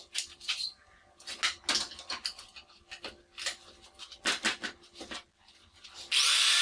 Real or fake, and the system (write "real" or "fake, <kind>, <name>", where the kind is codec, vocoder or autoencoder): real